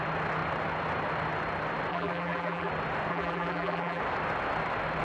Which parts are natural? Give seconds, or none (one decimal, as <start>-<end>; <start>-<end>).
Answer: 0.0-1.9; 2.7-3.1; 4.0-5.0